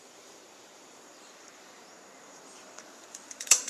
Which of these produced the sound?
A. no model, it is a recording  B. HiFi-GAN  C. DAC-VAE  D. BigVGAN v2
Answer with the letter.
D